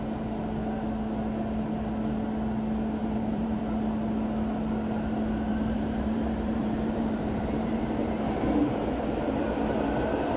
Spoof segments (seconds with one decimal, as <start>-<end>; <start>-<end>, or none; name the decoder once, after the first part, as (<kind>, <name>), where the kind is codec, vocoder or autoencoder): 3.0-3.6 (vocoder, BigVGAN v2); 5.5-8.9